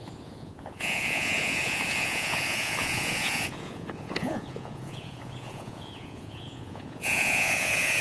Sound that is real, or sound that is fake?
fake